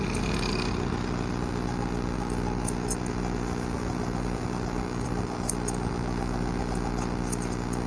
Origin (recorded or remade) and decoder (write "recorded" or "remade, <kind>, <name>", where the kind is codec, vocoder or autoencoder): recorded